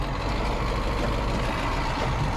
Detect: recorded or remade recorded